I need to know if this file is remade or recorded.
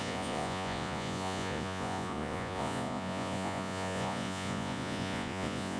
remade